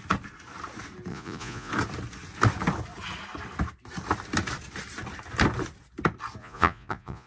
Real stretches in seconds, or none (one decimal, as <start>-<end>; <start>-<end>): 0.0-1.1; 1.7-6.4